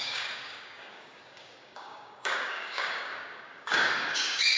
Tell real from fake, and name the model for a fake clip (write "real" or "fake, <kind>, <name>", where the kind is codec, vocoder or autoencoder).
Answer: fake, codec, DAC